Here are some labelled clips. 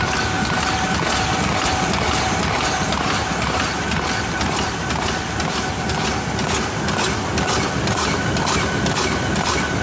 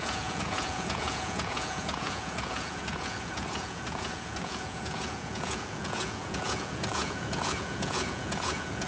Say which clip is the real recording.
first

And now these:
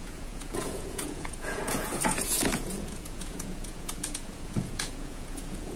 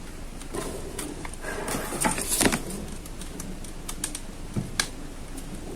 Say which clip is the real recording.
second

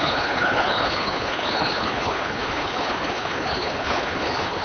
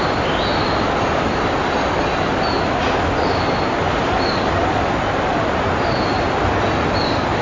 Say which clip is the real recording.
second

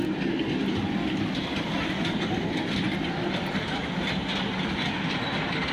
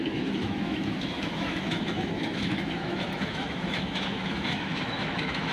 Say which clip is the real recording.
first